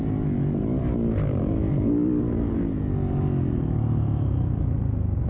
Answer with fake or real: real